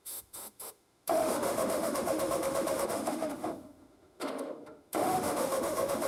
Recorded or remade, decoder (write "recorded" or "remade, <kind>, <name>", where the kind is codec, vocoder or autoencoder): remade, autoencoder, DAC-VAE